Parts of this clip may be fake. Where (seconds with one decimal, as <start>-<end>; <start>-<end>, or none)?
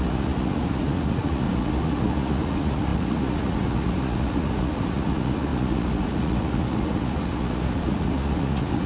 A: 0.0-8.9